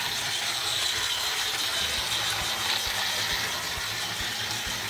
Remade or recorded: recorded